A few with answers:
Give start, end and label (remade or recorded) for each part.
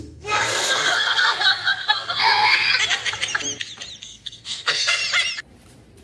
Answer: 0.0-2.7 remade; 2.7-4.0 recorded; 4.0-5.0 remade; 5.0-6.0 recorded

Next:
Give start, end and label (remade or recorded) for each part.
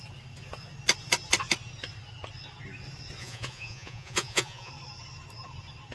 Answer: 0.0-3.2 recorded; 3.2-4.7 remade; 4.7-5.9 recorded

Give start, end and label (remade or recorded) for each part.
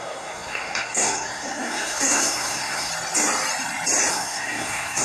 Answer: 0.0-2.9 remade; 2.9-4.1 recorded; 4.1-5.0 remade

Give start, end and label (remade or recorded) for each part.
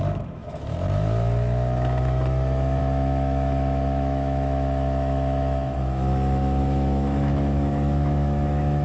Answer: 0.0-8.8 remade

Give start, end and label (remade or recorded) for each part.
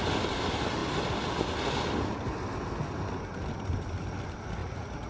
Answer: 0.0-4.6 recorded; 4.6-5.1 remade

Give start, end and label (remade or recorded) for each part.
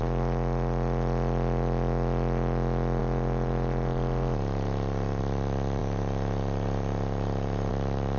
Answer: 0.0-3.0 recorded; 3.0-5.2 remade; 5.2-5.8 recorded; 5.8-7.7 remade; 7.7-8.2 recorded